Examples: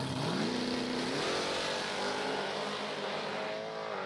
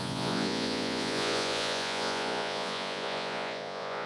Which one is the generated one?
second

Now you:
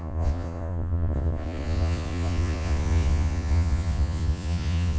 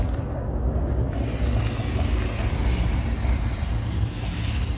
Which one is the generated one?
first